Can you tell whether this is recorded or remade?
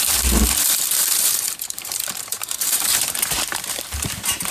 remade